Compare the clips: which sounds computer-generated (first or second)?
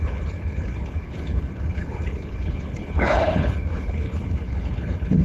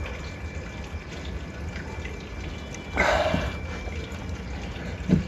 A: first